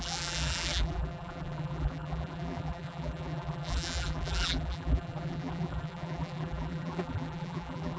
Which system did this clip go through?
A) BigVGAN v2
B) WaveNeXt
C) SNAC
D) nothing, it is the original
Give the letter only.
A